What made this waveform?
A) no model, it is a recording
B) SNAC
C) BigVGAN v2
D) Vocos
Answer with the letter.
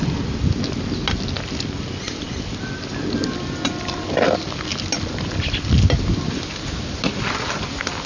A